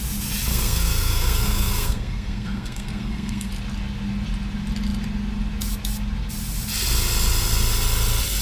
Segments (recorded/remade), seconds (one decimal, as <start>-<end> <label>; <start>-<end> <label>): 0.0-0.5 recorded; 0.5-3.5 remade; 3.5-8.4 recorded

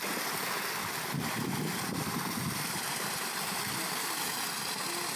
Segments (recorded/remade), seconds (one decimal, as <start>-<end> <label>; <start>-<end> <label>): 0.0-5.2 recorded

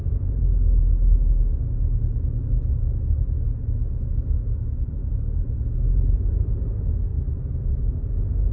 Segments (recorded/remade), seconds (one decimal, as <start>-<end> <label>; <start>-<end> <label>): 0.0-8.5 recorded

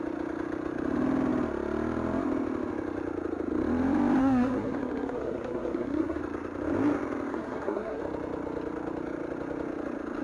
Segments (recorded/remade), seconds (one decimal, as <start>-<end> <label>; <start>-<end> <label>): 0.0-4.2 recorded; 4.2-6.2 remade; 6.2-7.3 recorded; 7.3-8.0 remade; 8.0-10.2 recorded

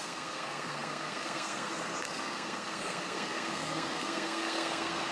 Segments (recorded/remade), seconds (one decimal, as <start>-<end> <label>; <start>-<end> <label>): 0.0-5.1 remade

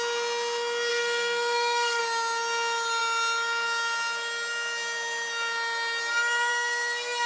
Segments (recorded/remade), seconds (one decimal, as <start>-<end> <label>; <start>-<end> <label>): 0.0-0.9 recorded; 0.9-2.0 remade; 2.0-7.3 recorded